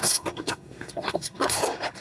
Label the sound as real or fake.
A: fake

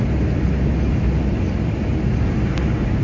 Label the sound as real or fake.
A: real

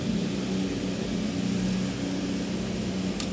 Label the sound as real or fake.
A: real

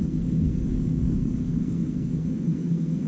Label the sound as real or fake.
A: fake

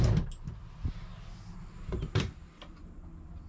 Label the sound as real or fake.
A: real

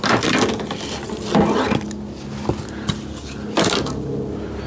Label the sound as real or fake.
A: real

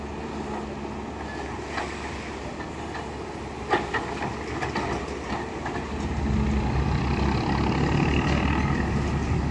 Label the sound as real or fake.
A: real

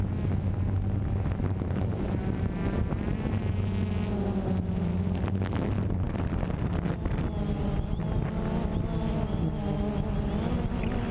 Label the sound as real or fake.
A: real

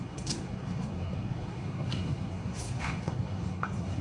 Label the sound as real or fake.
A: fake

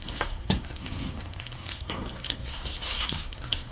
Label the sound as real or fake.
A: fake